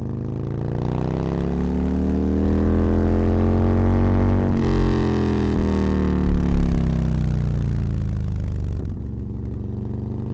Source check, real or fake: real